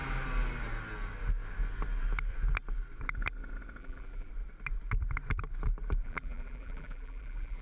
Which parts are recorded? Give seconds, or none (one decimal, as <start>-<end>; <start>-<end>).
0.0-3.8; 4.3-6.0